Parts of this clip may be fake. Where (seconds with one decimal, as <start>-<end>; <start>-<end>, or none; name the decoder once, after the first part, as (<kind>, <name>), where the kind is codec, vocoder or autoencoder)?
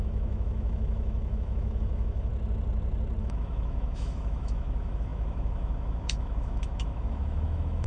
0.0-2.3 (autoencoder, DAC-VAE); 3.2-7.9